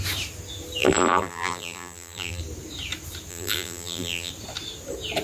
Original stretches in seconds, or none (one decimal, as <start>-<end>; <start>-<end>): 0.0-0.8; 2.4-3.3; 4.3-5.2